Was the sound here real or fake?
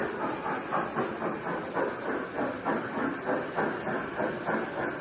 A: real